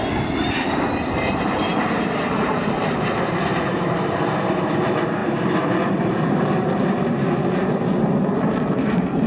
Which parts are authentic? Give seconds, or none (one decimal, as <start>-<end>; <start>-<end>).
none